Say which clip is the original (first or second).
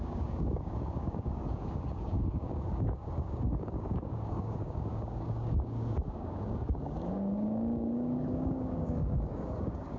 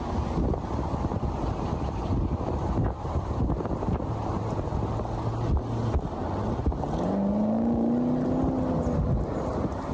second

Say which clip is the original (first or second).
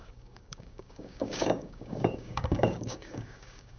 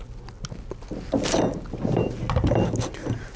second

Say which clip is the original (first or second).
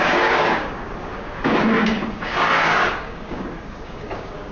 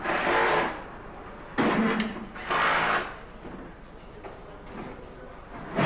second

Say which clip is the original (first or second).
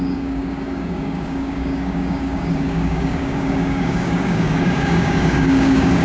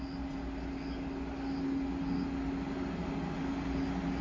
second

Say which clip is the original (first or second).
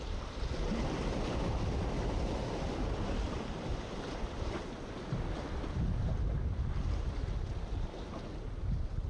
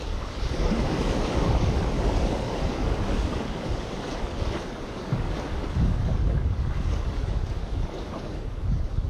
first